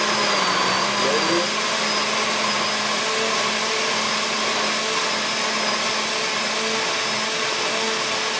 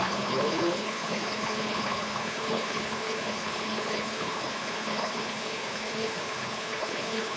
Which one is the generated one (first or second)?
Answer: second